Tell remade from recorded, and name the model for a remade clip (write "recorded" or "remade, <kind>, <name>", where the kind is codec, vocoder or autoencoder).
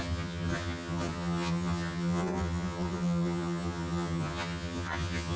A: remade, vocoder, HiFi-GAN